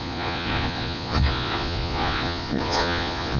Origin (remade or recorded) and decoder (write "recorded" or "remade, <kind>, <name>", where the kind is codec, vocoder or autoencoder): remade, vocoder, Vocos